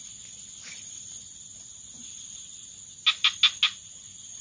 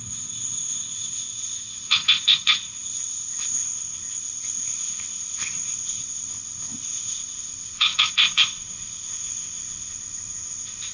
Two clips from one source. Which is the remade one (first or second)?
second